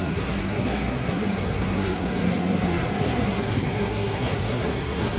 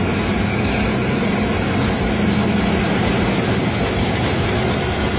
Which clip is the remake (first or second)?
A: first